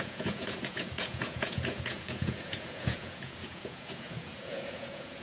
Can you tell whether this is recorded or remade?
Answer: remade